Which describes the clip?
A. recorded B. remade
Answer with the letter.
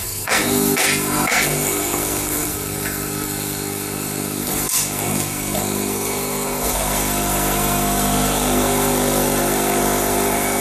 B